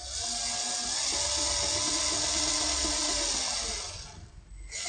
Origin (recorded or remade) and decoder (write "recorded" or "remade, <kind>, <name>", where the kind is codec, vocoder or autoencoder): recorded